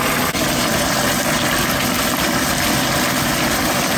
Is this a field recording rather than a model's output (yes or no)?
yes